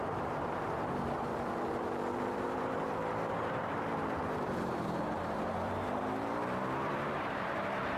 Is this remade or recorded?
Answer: remade